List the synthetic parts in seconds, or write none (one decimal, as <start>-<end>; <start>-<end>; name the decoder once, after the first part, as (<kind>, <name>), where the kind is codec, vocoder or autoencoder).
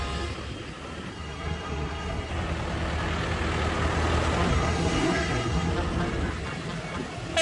1.1-2.3 (codec, SNAC); 4.5-5.7